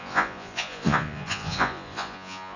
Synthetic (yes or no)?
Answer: yes